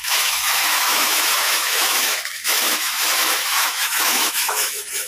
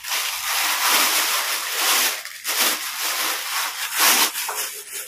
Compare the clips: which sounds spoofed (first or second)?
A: first